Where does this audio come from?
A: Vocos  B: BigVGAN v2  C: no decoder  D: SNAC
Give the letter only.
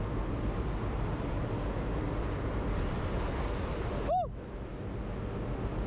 C